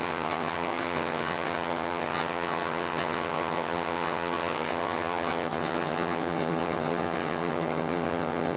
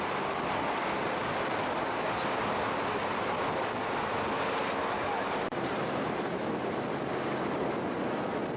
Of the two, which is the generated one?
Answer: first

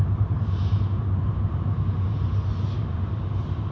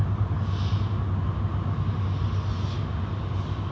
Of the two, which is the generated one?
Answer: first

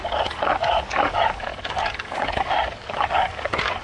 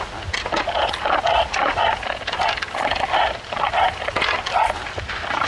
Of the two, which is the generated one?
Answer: first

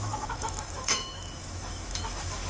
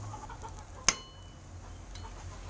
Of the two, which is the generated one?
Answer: first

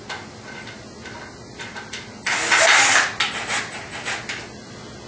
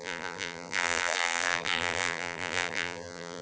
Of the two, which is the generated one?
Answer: second